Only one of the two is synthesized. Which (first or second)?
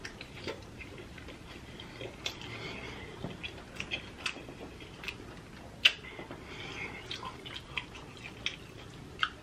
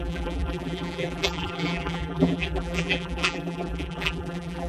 second